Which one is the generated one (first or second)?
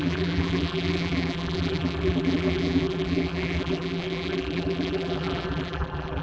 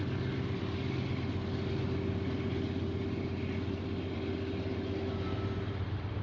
first